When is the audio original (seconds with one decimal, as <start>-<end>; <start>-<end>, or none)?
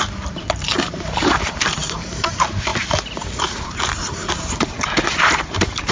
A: 2.7-3.4